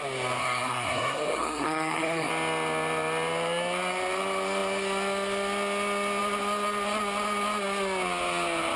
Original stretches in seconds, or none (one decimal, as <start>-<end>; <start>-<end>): 0.0-0.4; 2.3-8.8